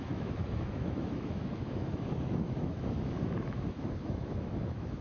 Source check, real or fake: fake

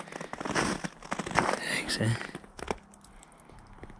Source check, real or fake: real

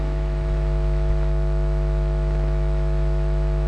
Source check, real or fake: fake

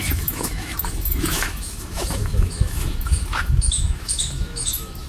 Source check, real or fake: fake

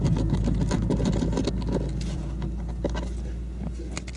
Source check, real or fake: real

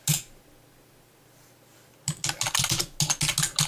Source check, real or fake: real